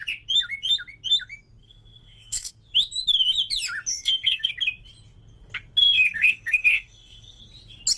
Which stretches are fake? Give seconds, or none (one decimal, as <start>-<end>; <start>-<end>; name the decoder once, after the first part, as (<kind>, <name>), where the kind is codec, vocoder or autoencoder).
1.6-2.5 (codec, SNAC); 3.9-4.5; 5.8-7.4